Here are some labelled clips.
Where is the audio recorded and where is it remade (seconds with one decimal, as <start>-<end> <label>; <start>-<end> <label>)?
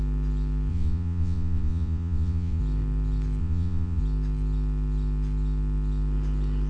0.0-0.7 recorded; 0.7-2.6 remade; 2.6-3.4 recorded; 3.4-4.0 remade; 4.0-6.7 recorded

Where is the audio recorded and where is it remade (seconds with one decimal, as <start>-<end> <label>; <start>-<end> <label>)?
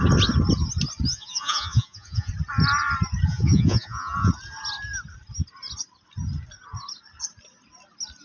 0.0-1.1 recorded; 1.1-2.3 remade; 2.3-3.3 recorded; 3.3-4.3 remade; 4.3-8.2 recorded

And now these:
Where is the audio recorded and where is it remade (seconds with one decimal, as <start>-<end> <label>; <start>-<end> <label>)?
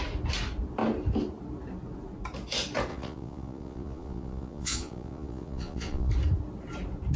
0.0-2.9 recorded; 2.9-6.1 remade; 6.1-7.2 recorded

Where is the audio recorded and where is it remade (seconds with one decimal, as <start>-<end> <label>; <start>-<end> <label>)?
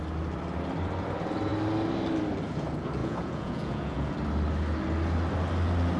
0.0-3.0 recorded; 3.0-4.1 remade; 4.1-6.0 recorded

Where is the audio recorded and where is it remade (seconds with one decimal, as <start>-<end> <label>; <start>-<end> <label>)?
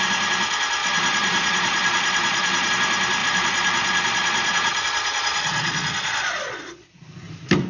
0.0-0.8 recorded; 0.8-2.7 remade; 2.7-3.2 recorded; 3.2-7.0 remade; 7.0-7.7 recorded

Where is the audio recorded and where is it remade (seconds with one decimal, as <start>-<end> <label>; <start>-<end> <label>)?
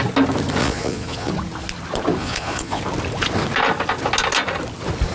0.0-0.6 recorded; 0.6-1.3 remade; 1.3-2.2 recorded; 2.2-2.8 remade; 2.8-5.1 recorded